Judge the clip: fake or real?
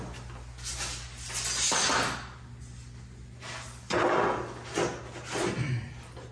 real